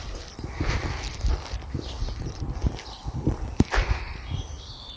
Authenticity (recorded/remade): remade